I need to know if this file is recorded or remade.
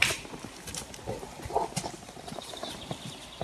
recorded